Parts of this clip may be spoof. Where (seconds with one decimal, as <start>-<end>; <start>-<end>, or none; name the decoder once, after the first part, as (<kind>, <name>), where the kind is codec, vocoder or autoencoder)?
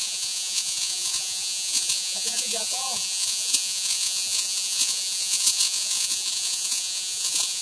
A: 0.0-7.6 (vocoder, Vocos)